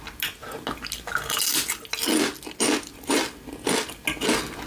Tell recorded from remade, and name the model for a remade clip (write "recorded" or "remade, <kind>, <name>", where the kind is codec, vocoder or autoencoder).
recorded